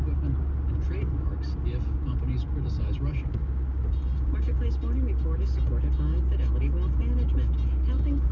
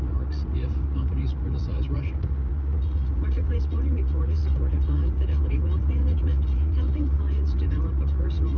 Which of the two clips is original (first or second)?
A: first